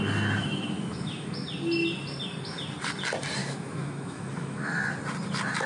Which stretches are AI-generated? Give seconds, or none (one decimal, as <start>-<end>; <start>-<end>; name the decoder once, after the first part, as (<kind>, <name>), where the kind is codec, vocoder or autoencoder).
0.4-1.3 (autoencoder, DAC-VAE); 3.4-4.8